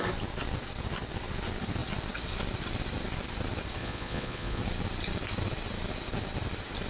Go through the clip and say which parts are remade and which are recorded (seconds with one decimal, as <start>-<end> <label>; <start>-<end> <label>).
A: 0.0-3.8 recorded; 3.8-4.6 remade; 4.6-6.9 recorded